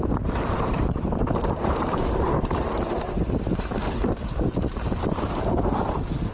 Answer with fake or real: fake